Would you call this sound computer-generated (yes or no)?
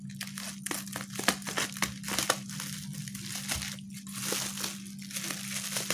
no